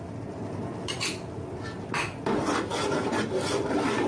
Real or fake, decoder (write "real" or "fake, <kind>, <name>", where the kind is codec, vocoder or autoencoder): real